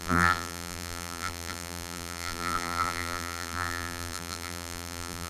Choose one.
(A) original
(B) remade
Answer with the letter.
B